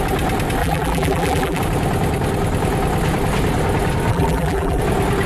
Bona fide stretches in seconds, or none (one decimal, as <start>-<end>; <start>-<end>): 0.0-0.6; 1.6-4.1; 4.8-5.3